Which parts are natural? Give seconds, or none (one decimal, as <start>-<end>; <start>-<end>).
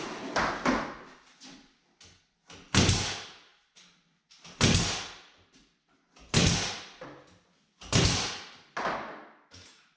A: 0.0-10.0